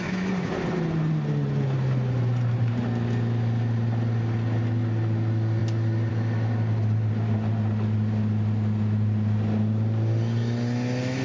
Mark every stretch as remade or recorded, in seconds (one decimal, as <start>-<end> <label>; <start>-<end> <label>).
0.0-11.2 recorded